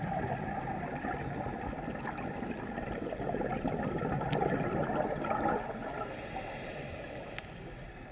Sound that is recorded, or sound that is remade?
recorded